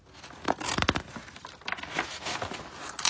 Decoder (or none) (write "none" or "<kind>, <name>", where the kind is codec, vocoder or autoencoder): none